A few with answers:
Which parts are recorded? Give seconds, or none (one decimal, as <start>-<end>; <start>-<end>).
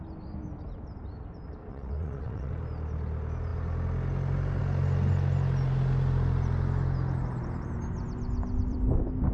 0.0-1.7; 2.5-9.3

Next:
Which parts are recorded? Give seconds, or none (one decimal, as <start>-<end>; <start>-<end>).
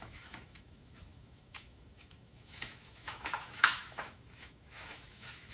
none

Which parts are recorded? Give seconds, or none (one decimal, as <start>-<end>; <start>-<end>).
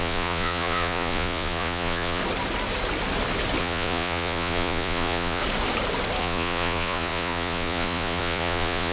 2.2-3.6; 5.4-6.2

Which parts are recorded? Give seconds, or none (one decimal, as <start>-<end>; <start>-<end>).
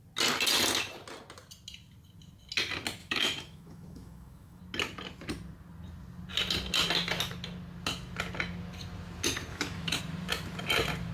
0.0-3.0; 4.6-9.5; 10.0-11.1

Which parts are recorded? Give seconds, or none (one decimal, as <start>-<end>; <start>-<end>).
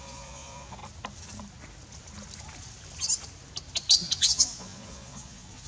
0.8-4.2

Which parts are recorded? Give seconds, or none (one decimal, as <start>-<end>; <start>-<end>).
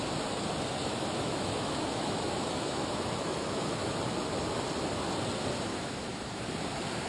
0.0-0.8; 4.0-5.7; 6.4-7.1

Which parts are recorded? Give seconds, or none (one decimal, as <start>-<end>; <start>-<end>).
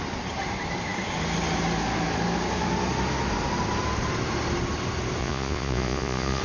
0.0-5.2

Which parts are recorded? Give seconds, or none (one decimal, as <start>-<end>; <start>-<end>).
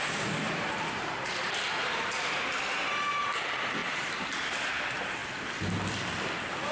0.0-6.7